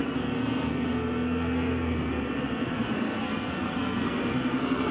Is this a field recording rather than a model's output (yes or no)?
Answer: no